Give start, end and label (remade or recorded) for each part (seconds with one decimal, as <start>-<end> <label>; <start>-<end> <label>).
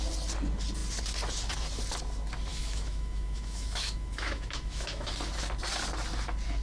0.0-2.5 recorded; 2.5-5.1 remade; 5.1-6.6 recorded